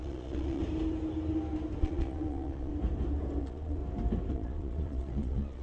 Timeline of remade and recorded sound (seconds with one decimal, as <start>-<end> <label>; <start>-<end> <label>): 0.0-0.6 remade; 0.6-1.8 recorded; 1.8-2.7 remade; 2.7-3.4 recorded; 3.4-3.8 remade; 3.8-4.3 recorded; 4.3-5.6 remade